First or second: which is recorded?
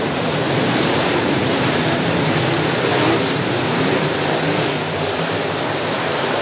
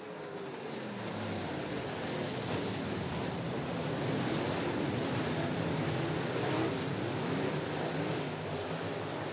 second